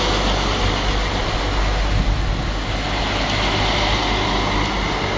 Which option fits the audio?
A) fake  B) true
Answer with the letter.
B